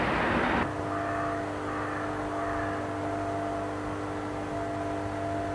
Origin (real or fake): real